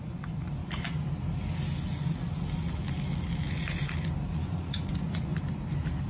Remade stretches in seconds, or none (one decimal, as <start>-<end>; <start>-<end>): 0.0-0.6; 4.3-5.3